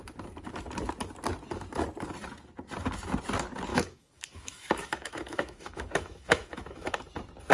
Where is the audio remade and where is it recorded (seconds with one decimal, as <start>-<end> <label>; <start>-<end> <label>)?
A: 0.0-3.7 recorded; 3.7-7.0 remade; 7.0-7.5 recorded